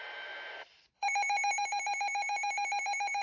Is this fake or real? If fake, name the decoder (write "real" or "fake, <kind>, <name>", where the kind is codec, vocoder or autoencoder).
fake, vocoder, BigVGAN v2